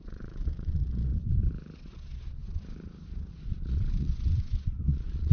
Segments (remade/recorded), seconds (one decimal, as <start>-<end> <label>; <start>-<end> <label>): 0.0-1.1 remade; 1.1-1.8 recorded; 1.8-2.4 remade; 2.4-3.3 recorded; 3.3-5.3 remade

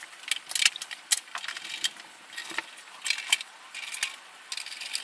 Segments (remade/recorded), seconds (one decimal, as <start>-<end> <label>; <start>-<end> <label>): 0.0-5.0 recorded

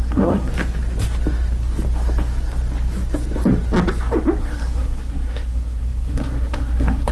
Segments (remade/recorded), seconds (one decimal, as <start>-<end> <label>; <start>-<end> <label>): 0.0-0.5 remade; 0.5-4.4 recorded; 4.4-7.1 remade

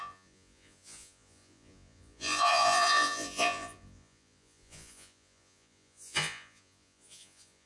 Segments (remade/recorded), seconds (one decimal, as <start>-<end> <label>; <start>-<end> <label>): 0.0-7.7 remade

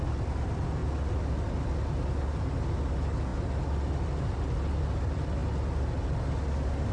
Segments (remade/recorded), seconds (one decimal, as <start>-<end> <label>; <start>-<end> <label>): 0.0-6.9 recorded

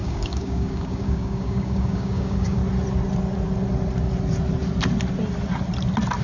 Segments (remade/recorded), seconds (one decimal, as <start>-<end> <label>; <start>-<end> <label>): 0.0-2.6 remade; 2.6-6.2 recorded

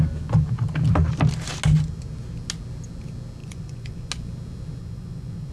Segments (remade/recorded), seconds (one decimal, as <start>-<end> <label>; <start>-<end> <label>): 0.0-3.4 recorded; 3.4-4.1 remade; 4.1-4.8 recorded; 4.8-5.5 remade